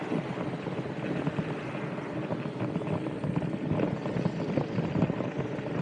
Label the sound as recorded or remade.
recorded